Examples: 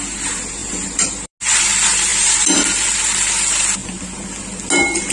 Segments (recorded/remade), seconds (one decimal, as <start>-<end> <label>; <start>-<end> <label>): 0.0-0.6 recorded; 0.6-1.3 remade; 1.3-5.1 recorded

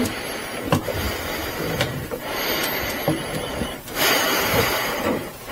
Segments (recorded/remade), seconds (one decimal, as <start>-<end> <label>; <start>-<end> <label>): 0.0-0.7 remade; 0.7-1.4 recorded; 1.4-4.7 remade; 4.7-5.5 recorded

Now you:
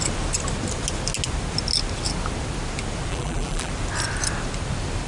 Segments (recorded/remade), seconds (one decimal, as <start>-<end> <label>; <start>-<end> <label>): 0.0-3.1 recorded; 3.1-3.7 remade; 3.7-5.1 recorded